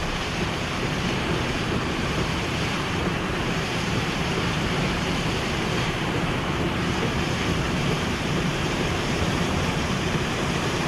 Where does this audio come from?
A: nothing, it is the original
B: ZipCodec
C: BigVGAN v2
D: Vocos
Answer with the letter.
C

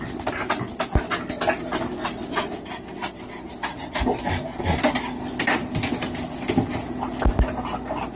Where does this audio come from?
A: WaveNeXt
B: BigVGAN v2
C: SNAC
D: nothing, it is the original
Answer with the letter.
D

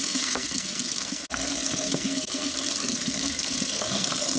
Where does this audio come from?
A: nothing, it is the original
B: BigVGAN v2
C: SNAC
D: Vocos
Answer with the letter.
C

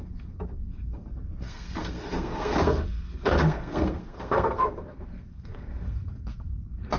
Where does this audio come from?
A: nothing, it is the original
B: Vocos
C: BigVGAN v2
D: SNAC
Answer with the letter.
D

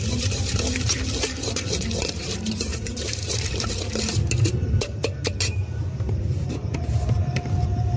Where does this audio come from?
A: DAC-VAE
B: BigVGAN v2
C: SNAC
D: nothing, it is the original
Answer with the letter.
B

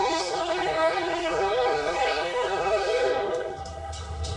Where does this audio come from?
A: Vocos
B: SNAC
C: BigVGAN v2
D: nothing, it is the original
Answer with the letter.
B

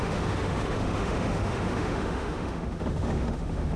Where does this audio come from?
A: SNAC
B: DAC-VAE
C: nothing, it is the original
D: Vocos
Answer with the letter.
B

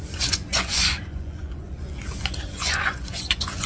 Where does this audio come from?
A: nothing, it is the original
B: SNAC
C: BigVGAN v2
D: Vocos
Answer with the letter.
D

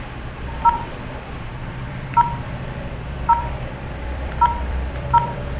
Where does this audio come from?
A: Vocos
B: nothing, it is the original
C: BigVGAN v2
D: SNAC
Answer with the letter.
C